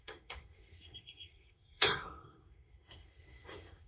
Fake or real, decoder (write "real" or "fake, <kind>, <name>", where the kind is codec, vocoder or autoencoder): fake, codec, SNAC